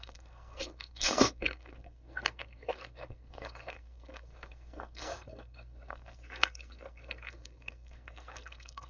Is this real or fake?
fake